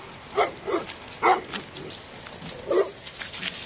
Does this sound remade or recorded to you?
recorded